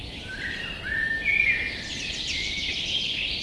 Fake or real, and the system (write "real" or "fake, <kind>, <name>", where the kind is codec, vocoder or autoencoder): real